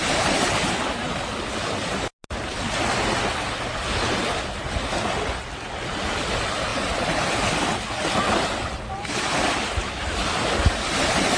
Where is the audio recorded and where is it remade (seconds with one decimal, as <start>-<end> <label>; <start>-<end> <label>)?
0.0-11.4 recorded